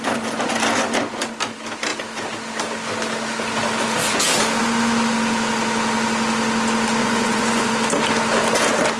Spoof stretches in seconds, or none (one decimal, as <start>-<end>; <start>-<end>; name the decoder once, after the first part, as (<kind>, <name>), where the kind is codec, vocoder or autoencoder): 7.0-7.7 (vocoder, Vocos)